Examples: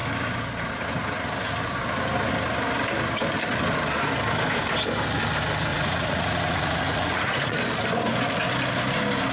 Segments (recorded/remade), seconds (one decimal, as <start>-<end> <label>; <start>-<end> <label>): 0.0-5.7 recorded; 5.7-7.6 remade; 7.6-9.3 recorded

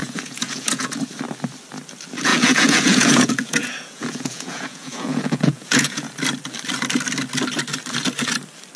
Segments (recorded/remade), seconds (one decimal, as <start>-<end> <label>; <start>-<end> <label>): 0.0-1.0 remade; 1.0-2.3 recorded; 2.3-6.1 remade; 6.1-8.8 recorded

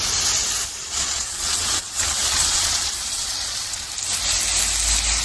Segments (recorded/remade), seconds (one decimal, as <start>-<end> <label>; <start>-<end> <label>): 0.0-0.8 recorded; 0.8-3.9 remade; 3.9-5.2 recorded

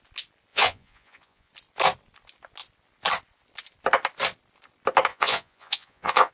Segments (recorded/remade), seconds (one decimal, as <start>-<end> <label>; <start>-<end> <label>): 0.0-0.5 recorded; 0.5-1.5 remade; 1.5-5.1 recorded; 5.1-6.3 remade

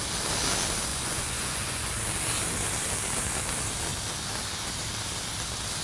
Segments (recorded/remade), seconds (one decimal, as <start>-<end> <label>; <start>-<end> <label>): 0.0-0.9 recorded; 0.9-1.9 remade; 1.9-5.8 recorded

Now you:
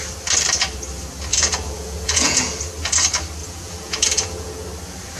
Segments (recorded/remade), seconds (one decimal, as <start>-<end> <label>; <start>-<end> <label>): 0.0-1.3 recorded; 1.3-2.6 remade; 2.6-3.4 recorded; 3.4-4.5 remade; 4.5-5.2 recorded

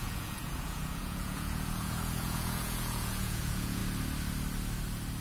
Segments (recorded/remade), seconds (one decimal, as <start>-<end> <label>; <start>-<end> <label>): 0.0-3.8 remade; 3.8-5.2 recorded